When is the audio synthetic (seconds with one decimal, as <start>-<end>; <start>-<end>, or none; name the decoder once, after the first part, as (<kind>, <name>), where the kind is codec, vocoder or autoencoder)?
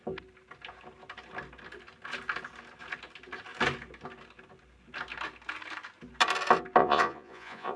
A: 6.8-7.8 (vocoder, Vocos)